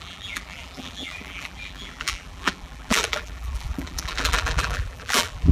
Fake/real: fake